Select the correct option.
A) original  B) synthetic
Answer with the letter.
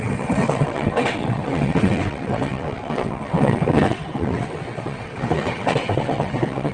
B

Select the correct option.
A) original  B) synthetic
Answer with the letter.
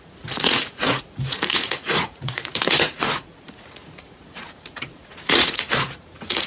B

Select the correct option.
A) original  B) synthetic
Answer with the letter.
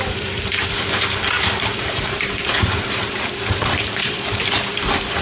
B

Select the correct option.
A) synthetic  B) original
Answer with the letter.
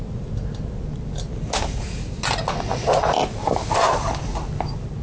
B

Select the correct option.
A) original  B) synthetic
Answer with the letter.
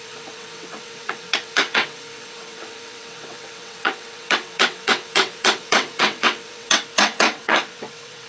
B